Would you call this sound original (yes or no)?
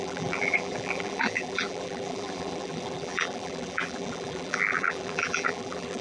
no